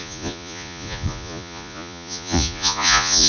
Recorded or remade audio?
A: remade